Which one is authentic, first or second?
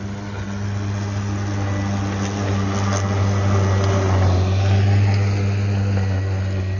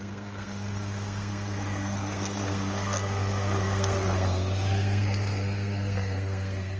first